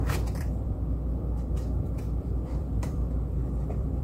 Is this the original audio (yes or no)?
no